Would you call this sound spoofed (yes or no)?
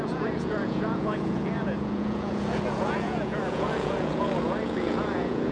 yes